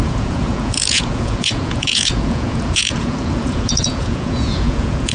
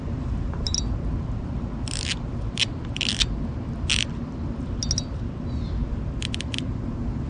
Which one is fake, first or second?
first